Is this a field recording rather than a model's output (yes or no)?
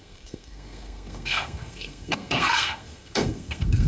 no